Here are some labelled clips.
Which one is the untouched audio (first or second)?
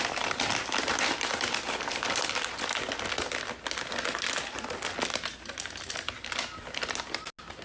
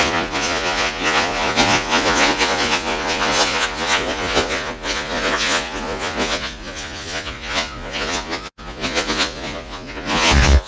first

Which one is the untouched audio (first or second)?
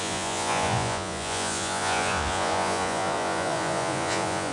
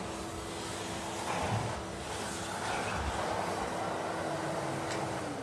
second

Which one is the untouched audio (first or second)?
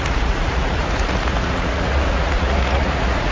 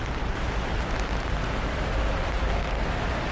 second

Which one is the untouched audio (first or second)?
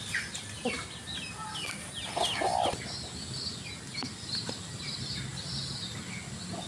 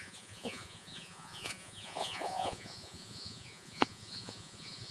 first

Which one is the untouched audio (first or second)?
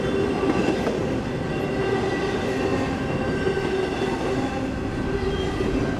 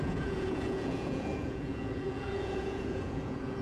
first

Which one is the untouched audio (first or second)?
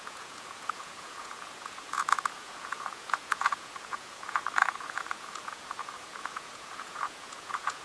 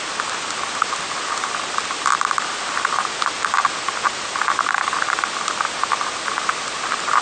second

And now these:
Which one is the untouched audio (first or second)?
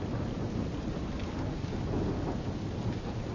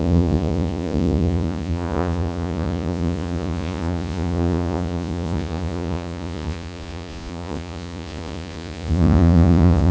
first